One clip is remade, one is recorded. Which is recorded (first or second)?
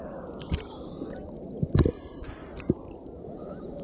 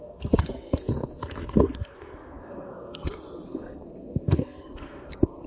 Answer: first